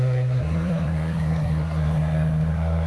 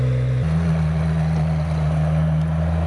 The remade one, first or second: first